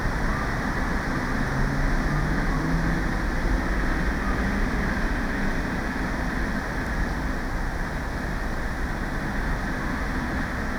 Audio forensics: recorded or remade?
recorded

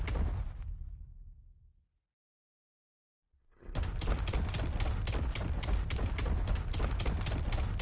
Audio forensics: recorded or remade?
recorded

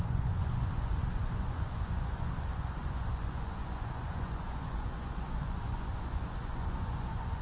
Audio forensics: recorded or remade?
remade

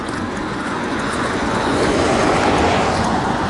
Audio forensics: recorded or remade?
remade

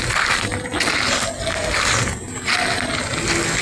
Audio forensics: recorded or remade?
recorded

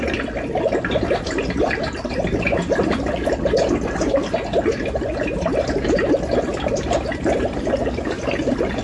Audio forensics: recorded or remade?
recorded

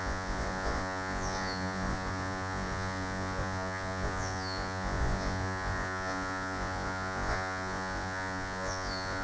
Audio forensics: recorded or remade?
remade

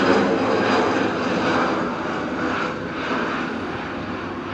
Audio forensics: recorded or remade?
recorded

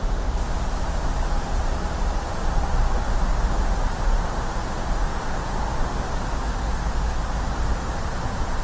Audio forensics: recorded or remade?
recorded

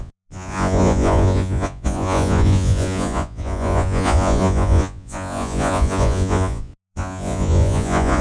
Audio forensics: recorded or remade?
remade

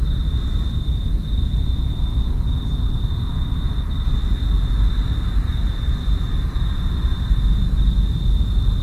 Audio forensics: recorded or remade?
recorded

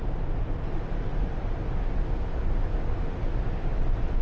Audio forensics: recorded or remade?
recorded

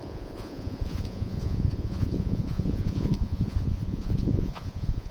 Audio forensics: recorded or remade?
remade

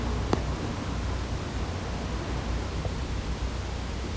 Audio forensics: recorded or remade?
recorded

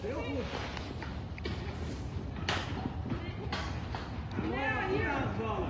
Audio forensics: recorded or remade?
recorded